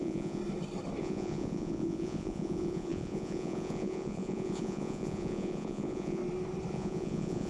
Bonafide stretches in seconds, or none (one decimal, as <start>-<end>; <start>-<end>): 0.4-1.0; 6.2-6.7